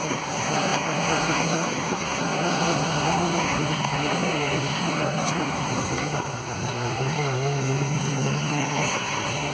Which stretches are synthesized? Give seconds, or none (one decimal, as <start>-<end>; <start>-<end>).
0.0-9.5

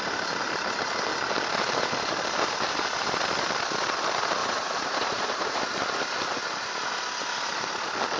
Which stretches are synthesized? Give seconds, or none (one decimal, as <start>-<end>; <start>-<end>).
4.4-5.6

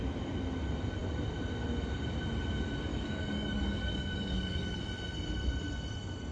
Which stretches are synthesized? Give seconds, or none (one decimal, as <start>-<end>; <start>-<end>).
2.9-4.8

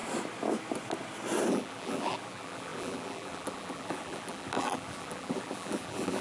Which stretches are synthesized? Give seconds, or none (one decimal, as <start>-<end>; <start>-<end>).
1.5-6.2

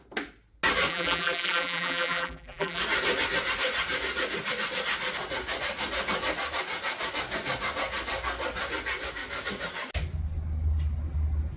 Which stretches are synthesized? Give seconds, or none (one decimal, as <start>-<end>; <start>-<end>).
0.9-2.8

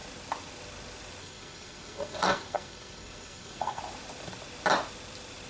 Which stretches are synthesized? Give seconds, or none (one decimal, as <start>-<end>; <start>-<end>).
1.2-3.8

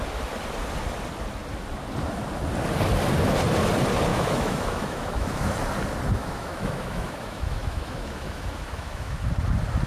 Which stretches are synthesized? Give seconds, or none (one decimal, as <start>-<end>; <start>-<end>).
4.1-5.5; 6.2-9.3